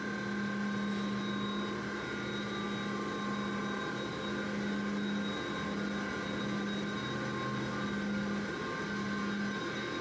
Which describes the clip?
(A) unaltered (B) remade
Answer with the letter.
A